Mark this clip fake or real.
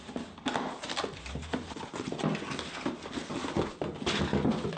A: real